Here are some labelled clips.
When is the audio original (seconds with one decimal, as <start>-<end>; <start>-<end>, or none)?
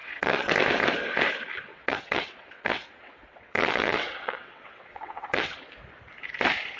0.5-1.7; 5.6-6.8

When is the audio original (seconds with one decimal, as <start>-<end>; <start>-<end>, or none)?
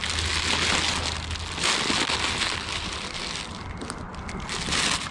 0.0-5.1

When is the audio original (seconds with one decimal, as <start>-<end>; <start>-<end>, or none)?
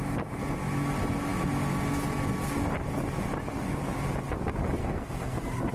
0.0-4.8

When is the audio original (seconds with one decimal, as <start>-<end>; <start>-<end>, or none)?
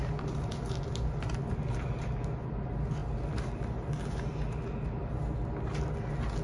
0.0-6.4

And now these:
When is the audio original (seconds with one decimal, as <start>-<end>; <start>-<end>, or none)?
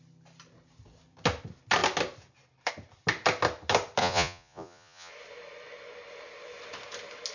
0.0-4.0; 5.1-7.3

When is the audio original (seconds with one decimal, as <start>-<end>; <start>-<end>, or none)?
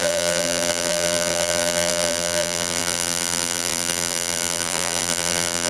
none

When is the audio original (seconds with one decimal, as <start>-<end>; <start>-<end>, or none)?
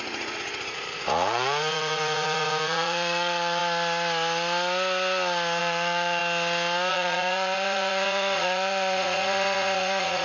3.6-5.6; 6.2-6.9